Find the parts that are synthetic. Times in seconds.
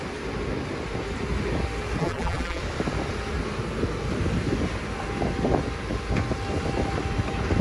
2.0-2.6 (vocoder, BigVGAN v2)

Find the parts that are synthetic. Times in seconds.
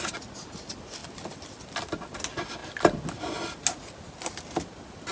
none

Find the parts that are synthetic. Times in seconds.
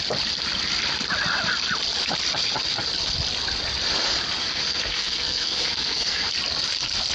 4.4-6.3 (codec, SNAC)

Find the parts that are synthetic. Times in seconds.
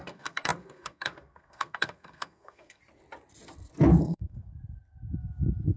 0.0-2.8 (codec, SNAC); 4.0-4.5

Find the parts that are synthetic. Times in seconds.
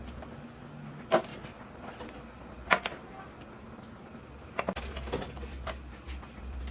none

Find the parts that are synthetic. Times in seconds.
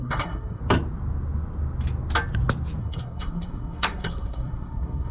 0.0-0.6 (codec, SNAC); 2.8-5.1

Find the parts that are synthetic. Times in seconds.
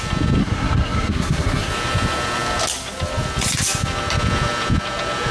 0.4-1.7 (codec, SNAC)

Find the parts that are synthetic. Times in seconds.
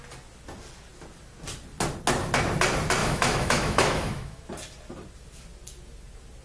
3.0-4.4 (autoencoder, DAC-VAE)